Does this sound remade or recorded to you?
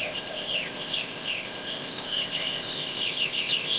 remade